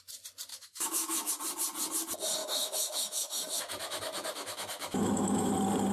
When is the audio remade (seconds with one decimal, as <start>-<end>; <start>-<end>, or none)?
0.5-1.3; 2.4-5.5